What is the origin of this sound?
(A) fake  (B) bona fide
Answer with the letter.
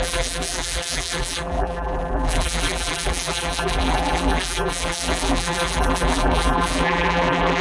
A